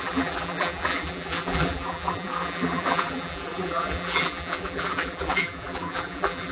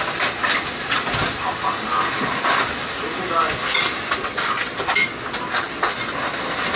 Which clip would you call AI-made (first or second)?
first